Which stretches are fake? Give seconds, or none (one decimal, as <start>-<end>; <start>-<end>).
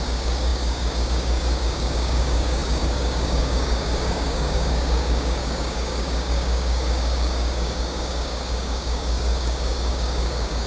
0.0-10.7